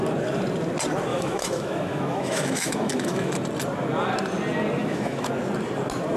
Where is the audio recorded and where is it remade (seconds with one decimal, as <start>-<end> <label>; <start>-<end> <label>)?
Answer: 0.0-1.1 recorded; 1.1-3.3 remade; 3.3-4.8 recorded; 4.8-5.3 remade; 5.3-6.2 recorded